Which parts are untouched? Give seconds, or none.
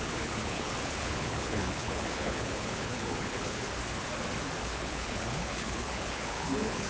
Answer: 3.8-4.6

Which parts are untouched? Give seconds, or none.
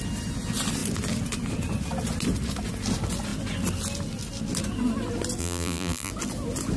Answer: 0.0-5.4; 6.1-6.8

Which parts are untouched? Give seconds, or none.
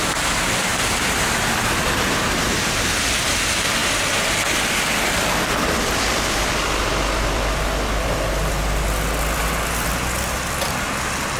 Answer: 0.0-11.4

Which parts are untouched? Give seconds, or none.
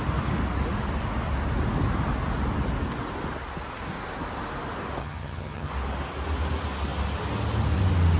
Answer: 0.0-5.0; 5.7-8.2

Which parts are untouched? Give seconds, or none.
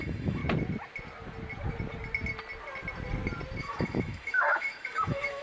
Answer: 0.4-3.6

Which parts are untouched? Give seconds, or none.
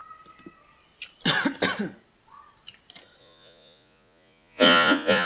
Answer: 0.0-3.2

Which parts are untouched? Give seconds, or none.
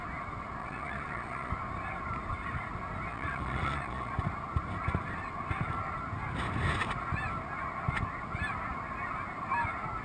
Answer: 0.0-0.6; 1.5-3.1; 4.1-10.0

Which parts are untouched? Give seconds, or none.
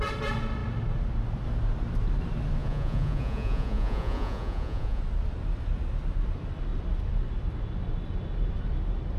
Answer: 0.0-2.6; 5.0-9.2